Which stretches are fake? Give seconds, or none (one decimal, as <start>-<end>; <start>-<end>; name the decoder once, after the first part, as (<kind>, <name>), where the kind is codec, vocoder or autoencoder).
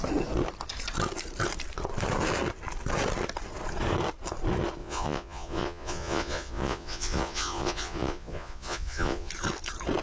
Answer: 4.8-9.3 (vocoder, Vocos)